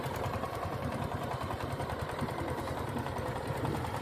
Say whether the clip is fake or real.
fake